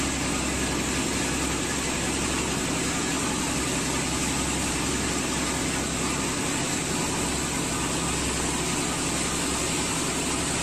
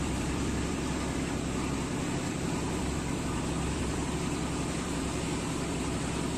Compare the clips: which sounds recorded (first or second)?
first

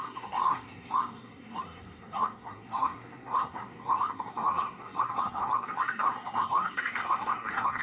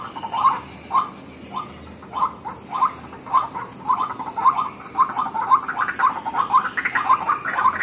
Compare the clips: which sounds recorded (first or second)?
second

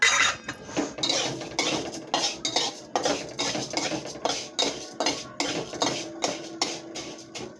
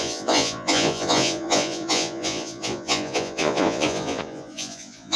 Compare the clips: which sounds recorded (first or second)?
first